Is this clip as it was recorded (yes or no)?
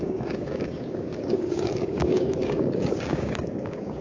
no